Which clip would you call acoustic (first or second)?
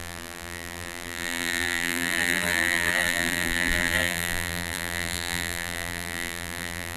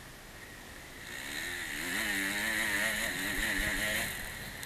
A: second